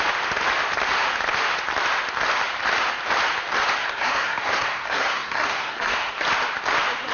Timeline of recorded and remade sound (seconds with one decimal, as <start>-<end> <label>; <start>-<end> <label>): 0.0-3.8 recorded; 3.8-6.1 remade; 6.1-7.1 recorded